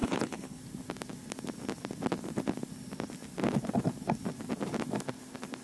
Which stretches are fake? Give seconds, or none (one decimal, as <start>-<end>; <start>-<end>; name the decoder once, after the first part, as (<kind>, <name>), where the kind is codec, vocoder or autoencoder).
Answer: 0.0-0.6 (codec, HILCodec)